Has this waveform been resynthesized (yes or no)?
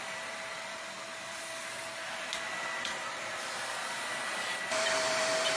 yes